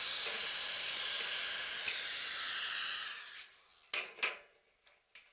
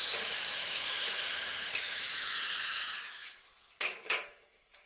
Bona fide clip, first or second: first